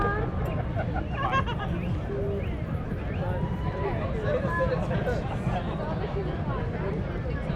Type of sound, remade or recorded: recorded